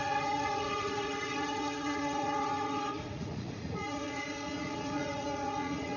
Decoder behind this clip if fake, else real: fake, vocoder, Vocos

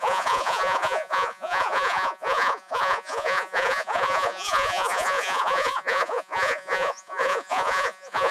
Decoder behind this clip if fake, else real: fake, vocoder, Vocos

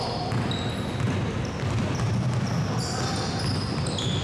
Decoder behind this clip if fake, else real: real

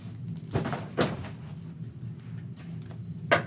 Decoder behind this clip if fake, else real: real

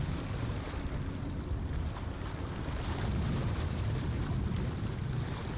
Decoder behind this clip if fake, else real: real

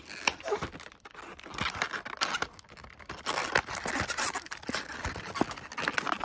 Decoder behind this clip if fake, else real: real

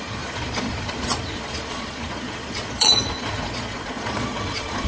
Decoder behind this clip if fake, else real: fake, vocoder, Vocos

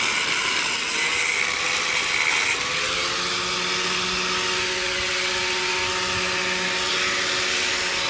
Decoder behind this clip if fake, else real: real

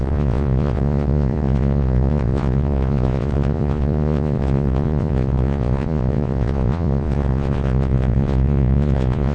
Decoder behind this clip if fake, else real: fake, vocoder, Vocos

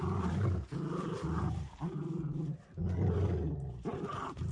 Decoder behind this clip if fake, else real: real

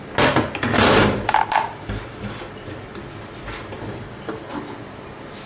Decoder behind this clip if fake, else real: real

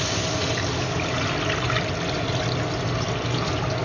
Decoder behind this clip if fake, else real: real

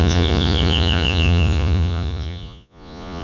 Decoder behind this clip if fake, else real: fake, vocoder, Vocos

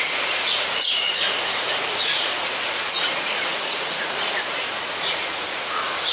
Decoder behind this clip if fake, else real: fake, vocoder, Vocos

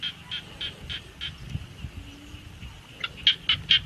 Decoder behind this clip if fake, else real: real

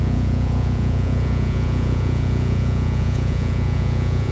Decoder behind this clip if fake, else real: fake, vocoder, Vocos